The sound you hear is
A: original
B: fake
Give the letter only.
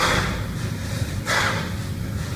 A